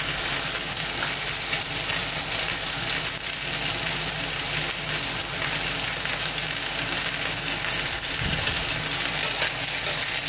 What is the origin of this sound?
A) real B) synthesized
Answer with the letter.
A